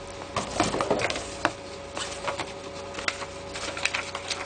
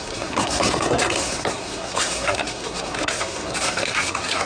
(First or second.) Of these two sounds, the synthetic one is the second